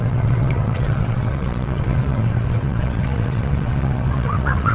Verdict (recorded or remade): remade